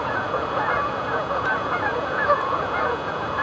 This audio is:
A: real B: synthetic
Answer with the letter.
B